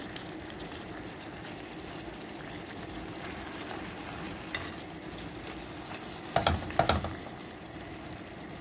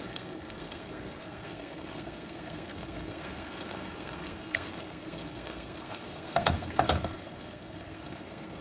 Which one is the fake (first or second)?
second